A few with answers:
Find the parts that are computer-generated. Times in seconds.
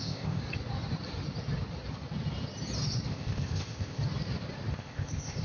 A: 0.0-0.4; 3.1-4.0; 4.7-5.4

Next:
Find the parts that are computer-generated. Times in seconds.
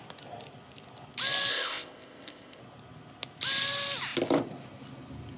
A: 1.5-2.6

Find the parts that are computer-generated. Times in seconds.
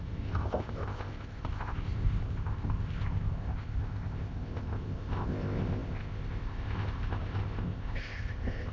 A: 0.0-8.7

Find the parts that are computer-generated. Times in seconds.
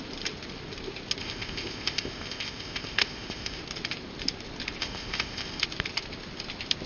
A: 1.2-3.6; 4.8-5.6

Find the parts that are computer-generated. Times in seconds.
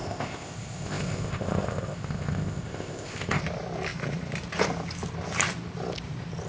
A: 0.0-3.4